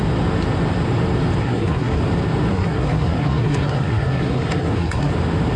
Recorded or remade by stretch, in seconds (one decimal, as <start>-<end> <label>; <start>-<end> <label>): 0.0-1.4 recorded; 1.4-2.0 remade; 2.0-2.5 recorded; 2.5-5.1 remade; 5.1-5.6 recorded